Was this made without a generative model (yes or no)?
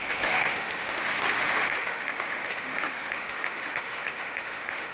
no